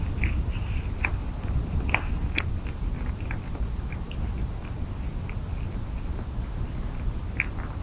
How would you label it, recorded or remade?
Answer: recorded